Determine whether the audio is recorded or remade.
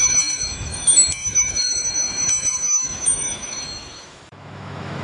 remade